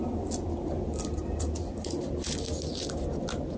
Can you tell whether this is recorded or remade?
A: recorded